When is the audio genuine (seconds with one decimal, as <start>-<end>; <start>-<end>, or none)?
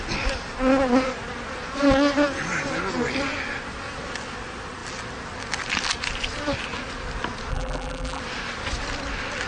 0.0-7.5; 8.2-9.5